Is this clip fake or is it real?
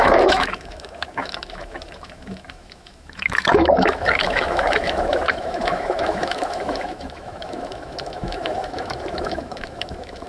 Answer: fake